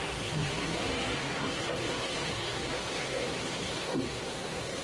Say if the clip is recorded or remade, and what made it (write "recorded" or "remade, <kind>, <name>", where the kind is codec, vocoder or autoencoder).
remade, codec, SNAC